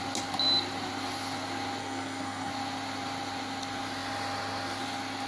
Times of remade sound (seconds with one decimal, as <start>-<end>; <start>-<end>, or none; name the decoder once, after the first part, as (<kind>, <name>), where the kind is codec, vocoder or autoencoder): 1.8-2.5 (codec, SNAC)